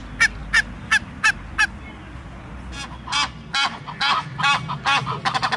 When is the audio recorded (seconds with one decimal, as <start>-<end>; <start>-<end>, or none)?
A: 0.0-5.6